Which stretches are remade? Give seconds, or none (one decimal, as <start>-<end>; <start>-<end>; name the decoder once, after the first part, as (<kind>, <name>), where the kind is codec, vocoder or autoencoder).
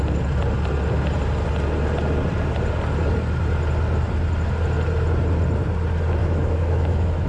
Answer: 6.2-7.3 (autoencoder, DAC-VAE)